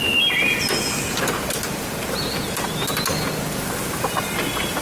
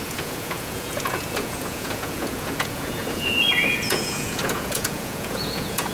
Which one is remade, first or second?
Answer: second